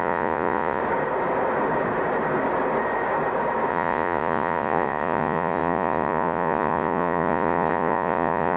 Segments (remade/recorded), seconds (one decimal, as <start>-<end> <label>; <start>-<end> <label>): 0.0-0.8 remade; 0.8-3.7 recorded; 3.7-8.6 remade